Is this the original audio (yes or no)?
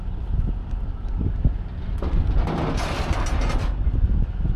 yes